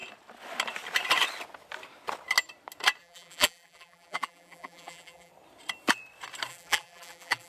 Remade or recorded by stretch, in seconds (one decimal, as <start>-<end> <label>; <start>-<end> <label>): 0.0-3.0 recorded; 3.0-5.3 remade; 5.3-6.5 recorded; 6.5-7.5 remade